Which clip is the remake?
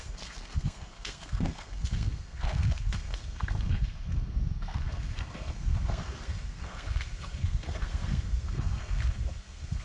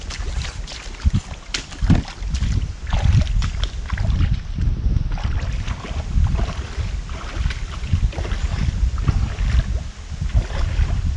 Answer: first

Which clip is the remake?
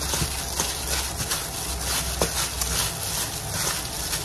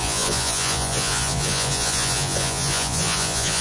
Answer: second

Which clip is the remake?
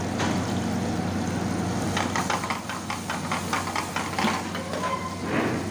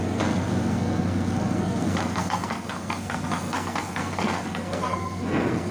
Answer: second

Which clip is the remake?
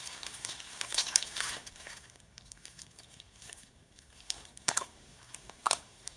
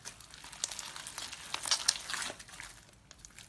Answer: first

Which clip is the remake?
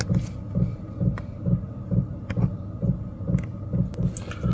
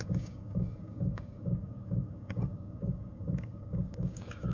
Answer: second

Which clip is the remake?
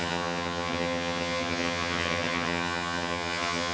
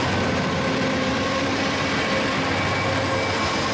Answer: first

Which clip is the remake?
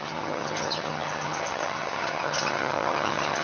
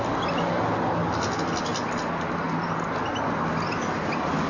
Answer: first